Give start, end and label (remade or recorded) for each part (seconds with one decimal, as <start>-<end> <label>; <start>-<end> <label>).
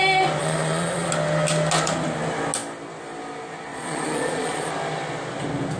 0.0-0.4 recorded; 0.4-1.1 remade; 1.1-3.7 recorded; 3.7-4.7 remade; 4.7-5.8 recorded